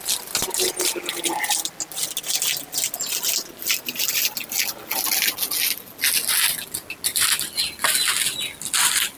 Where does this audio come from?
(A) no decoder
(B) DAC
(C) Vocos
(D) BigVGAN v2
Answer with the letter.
A